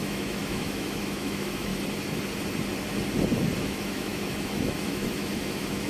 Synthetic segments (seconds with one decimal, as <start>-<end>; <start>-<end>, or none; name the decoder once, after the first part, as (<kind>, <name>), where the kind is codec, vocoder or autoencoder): 0.0-1.7 (autoencoder, DAC-VAE); 3.6-5.9